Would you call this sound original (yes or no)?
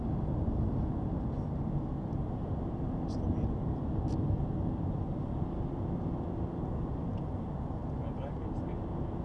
yes